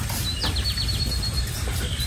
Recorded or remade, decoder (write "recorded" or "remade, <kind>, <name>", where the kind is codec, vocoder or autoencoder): recorded